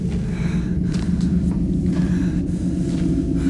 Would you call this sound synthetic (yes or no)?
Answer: no